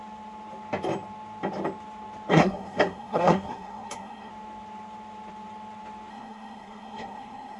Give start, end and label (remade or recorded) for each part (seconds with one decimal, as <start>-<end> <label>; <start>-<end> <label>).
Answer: 0.0-2.3 recorded; 2.3-4.3 remade; 4.3-6.1 recorded; 6.1-7.6 remade